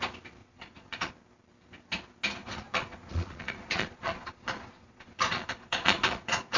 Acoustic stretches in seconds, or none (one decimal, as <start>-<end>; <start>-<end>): 0.0-0.4; 1.1-2.4